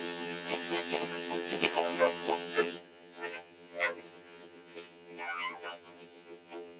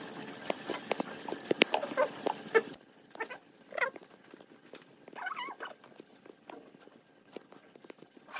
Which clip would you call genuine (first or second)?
second